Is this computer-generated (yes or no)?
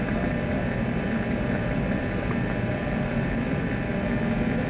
yes